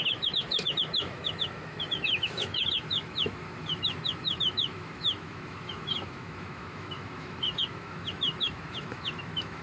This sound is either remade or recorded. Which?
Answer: remade